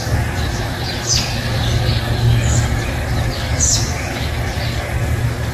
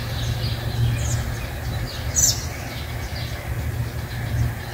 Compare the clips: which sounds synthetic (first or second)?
first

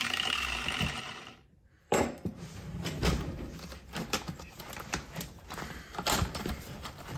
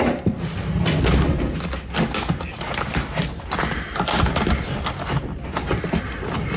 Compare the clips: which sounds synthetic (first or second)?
first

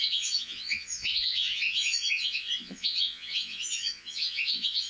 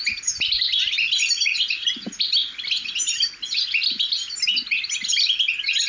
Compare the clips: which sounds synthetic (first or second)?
first